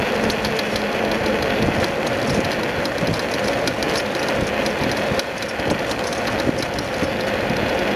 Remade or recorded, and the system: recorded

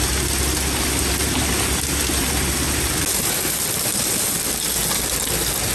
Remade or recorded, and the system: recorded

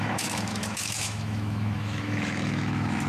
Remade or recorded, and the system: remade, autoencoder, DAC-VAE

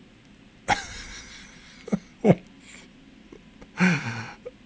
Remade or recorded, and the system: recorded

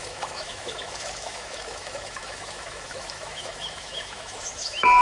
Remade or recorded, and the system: remade, autoencoder, DAC-VAE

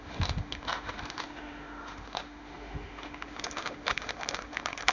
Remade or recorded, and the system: remade, autoencoder, DAC-VAE